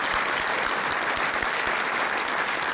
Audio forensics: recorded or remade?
recorded